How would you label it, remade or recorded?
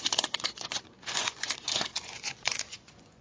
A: remade